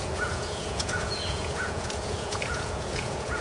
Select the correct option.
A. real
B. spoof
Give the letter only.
B